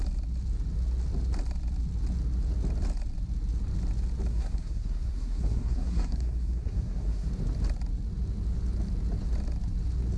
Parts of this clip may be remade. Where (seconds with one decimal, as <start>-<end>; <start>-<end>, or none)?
4.3-7.3

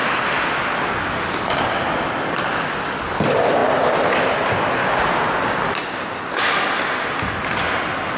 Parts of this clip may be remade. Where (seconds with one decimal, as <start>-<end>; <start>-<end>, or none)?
none

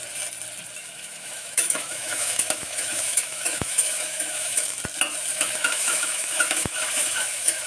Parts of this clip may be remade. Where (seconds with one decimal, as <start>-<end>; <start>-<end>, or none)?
0.8-4.8; 5.3-7.7

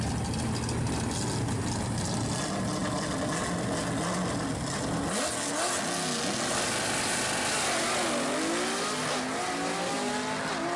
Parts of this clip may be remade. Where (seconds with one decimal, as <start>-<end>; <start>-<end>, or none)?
none

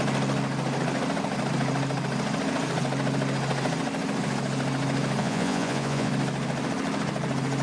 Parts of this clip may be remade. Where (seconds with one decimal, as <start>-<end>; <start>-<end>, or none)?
5.2-6.1